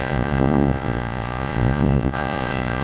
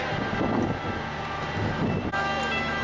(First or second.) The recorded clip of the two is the second